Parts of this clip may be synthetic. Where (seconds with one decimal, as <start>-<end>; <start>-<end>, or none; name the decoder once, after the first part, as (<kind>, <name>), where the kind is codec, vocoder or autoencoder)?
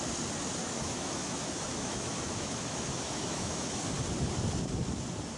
0.6-3.8 (autoencoder, DAC-VAE)